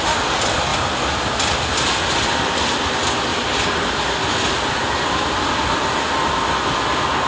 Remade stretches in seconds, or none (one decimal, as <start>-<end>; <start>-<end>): none